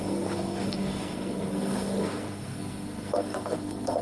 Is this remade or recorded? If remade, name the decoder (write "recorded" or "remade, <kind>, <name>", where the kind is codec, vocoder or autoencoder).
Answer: remade, codec, SNAC